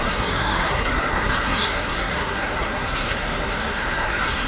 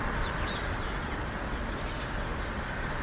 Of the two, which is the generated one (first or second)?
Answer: first